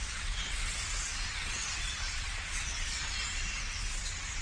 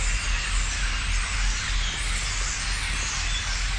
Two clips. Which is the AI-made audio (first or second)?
first